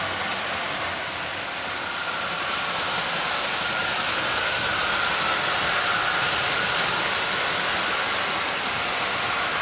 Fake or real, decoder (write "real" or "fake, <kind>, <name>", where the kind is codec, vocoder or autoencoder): real